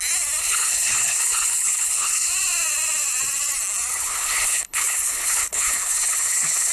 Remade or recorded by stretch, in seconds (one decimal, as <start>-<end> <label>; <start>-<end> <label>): 0.0-0.4 recorded; 0.4-2.3 remade; 2.3-3.9 recorded; 3.9-6.7 remade